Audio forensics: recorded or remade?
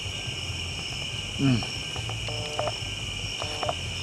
recorded